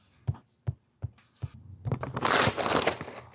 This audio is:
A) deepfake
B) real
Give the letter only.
B